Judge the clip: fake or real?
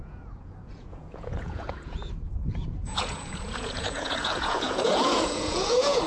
fake